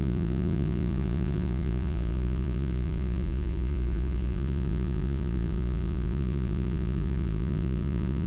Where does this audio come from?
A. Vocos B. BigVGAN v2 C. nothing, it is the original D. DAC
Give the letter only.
A